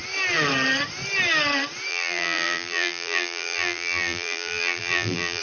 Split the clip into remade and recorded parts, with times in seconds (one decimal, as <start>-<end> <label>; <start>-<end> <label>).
0.0-1.9 recorded; 1.9-5.4 remade

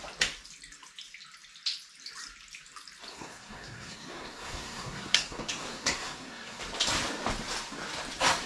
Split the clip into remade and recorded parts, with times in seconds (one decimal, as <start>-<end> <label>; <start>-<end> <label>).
0.0-3.1 recorded; 3.1-6.6 remade; 6.6-8.5 recorded

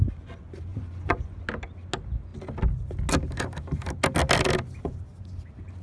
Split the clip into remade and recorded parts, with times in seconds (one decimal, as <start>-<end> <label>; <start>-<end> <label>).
0.0-0.7 recorded; 0.7-1.4 remade; 1.4-5.8 recorded

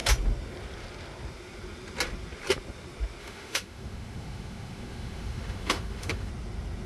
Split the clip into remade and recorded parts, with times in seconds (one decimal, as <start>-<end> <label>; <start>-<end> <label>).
0.0-3.2 recorded; 3.2-6.3 remade; 6.3-6.9 recorded

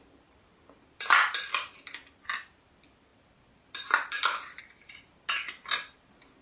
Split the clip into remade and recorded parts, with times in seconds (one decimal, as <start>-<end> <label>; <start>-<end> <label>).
0.0-6.4 recorded

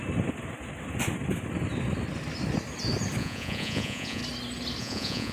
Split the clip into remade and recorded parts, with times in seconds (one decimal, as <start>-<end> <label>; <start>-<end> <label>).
0.0-3.2 recorded; 3.2-4.2 remade; 4.2-4.8 recorded; 4.8-5.3 remade

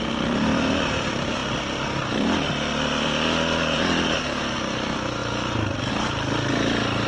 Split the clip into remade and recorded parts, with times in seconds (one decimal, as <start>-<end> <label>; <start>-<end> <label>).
0.0-7.1 recorded